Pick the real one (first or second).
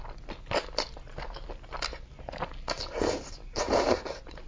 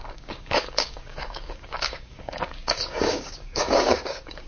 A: first